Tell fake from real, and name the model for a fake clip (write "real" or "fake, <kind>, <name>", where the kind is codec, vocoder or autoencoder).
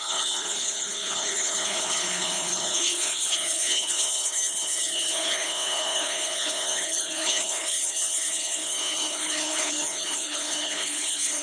fake, codec, HILCodec